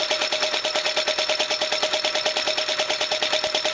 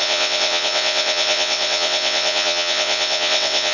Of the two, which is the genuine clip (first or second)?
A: first